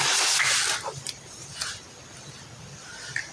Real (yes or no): yes